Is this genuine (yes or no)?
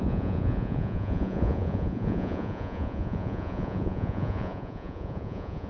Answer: no